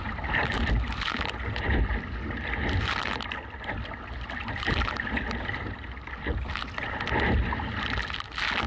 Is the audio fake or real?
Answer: real